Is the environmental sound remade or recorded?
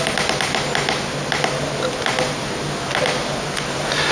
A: recorded